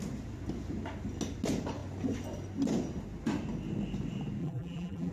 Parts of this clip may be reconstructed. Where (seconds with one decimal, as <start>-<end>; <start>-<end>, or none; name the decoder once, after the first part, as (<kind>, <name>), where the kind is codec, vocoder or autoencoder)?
4.4-5.1 (vocoder, BigVGAN v2)